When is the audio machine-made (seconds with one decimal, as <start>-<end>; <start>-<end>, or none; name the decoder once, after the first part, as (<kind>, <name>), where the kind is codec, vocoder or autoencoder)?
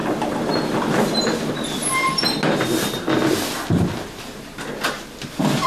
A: none